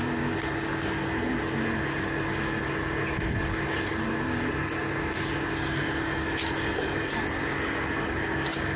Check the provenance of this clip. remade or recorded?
recorded